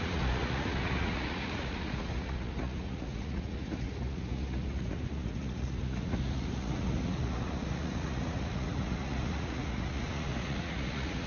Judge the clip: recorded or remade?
remade